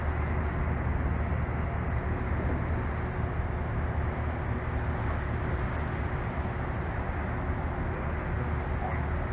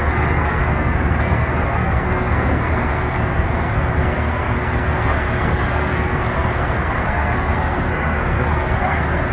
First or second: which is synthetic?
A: second